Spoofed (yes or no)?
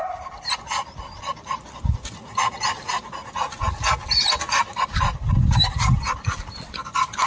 no